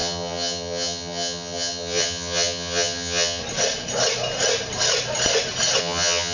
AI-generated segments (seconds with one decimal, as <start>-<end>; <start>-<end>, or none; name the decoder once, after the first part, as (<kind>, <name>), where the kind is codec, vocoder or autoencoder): 0.0-3.4 (vocoder, HiFi-GAN); 5.8-6.3